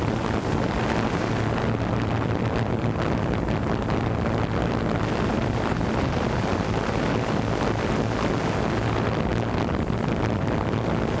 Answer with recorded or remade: recorded